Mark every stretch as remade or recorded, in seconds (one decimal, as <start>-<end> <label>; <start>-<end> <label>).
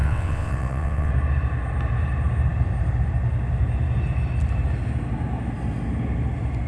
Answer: 0.0-1.1 remade; 1.1-6.7 recorded